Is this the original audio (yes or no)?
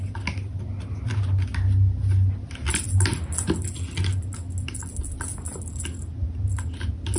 yes